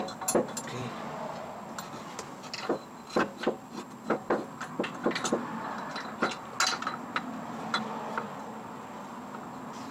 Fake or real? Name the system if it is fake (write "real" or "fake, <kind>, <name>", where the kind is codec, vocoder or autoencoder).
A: real